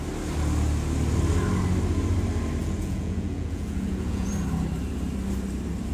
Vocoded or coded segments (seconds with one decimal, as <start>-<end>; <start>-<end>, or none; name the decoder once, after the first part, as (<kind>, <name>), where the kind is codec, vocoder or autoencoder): 2.6-4.3 (vocoder, Vocos)